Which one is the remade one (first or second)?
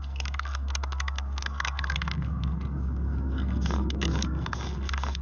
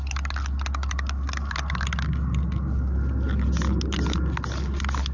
first